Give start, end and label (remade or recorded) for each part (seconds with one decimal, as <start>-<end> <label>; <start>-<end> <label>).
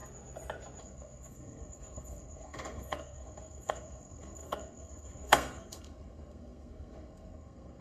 0.0-0.8 recorded; 0.8-7.8 remade